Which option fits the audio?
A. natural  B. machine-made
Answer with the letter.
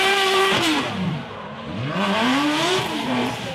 B